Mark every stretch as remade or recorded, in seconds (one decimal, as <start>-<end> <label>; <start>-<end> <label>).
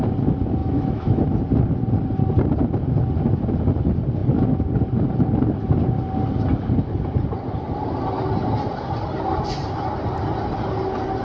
0.0-0.6 recorded; 0.6-1.2 remade; 1.2-11.2 recorded